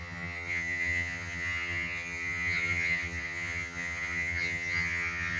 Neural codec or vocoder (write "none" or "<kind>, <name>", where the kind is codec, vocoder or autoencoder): vocoder, HiFi-GAN